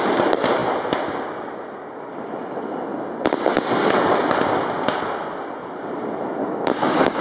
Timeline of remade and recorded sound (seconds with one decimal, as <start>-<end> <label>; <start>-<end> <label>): 0.0-6.4 recorded; 6.4-7.2 remade